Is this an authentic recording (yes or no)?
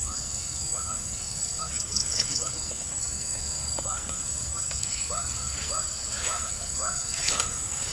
no